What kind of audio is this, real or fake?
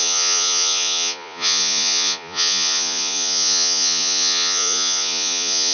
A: fake